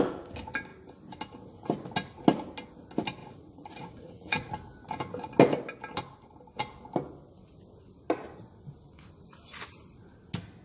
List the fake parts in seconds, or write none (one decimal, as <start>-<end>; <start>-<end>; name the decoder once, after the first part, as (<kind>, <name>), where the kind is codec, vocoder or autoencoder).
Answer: 3.2-4.5 (vocoder, Vocos)